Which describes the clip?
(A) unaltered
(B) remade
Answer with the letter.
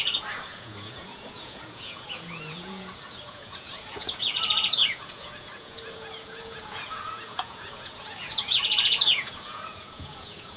B